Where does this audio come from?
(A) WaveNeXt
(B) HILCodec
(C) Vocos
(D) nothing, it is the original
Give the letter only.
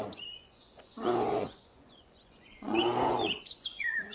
C